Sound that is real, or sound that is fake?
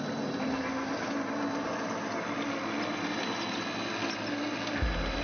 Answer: real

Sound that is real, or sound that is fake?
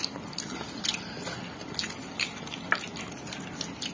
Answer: real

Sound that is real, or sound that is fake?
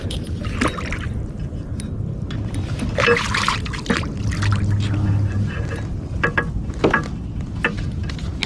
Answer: real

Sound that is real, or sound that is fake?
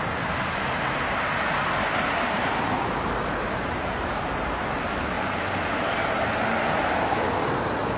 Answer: fake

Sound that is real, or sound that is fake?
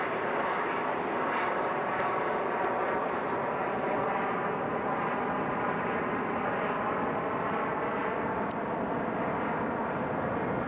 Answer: real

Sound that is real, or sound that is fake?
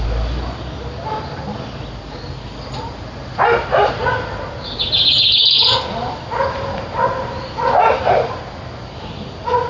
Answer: fake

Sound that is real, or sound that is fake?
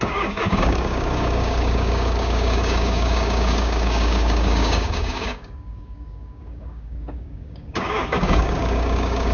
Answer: fake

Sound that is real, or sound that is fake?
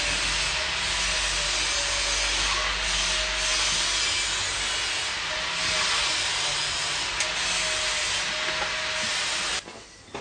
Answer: real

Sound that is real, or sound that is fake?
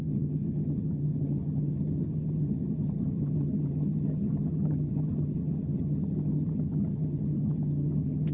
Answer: fake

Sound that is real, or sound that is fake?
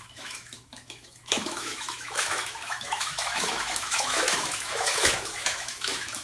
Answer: fake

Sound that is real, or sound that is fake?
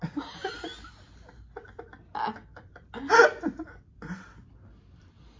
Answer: real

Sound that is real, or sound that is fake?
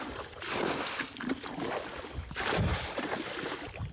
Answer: real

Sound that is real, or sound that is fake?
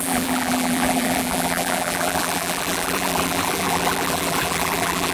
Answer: fake